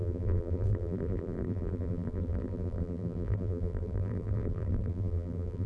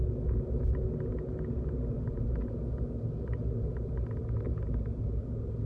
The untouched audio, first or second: second